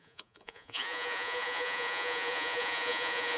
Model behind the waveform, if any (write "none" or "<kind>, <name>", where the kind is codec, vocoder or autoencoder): vocoder, Vocos